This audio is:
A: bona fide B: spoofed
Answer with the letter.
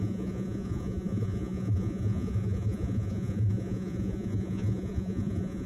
B